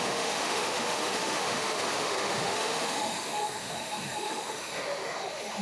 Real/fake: fake